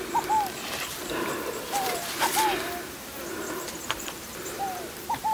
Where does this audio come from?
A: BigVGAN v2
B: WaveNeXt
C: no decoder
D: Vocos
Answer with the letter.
A